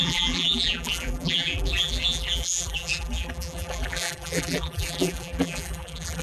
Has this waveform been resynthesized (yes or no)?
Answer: yes